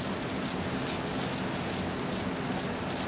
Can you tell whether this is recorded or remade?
recorded